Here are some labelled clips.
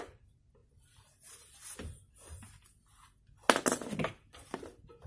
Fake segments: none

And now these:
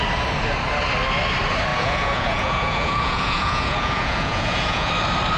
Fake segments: 1.7-4.9 (vocoder, Vocos)

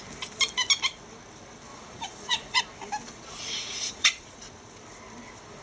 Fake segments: 1.7-2.6 (vocoder, Vocos); 3.3-4.4

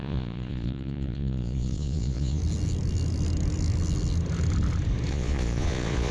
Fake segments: 0.0-2.4 (vocoder, Vocos); 5.1-6.1

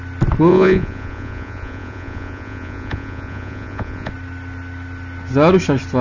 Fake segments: 0.5-4.1 (vocoder, Vocos)

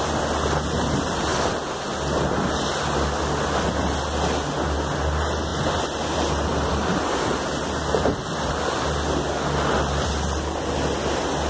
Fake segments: none

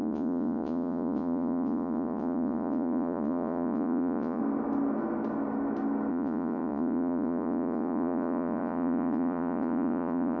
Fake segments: 0.0-4.4 (vocoder, Vocos); 6.1-10.4